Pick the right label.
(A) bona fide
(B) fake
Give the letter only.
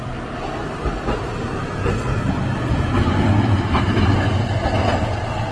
A